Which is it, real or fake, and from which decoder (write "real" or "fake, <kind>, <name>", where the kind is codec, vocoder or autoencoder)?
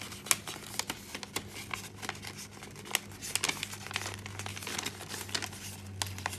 real